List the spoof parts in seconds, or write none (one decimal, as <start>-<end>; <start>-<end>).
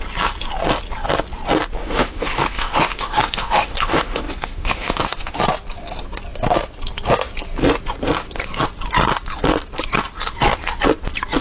1.8-5.4